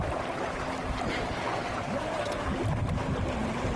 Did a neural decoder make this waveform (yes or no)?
no